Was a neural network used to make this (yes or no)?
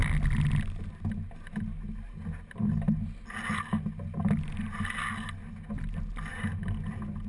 no